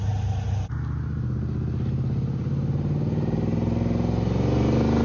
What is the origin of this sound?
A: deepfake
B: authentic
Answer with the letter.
B